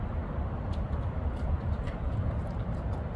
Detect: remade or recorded recorded